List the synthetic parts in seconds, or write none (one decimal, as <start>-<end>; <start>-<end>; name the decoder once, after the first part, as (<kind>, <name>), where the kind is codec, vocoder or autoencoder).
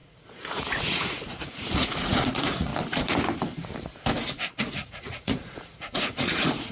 0.0-2.7 (vocoder, Vocos); 4.6-6.7